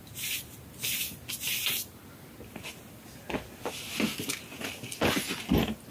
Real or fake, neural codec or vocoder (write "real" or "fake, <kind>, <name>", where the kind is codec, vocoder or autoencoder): real